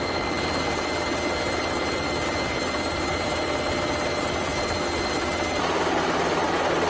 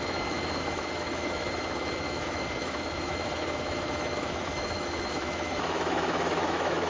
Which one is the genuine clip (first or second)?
first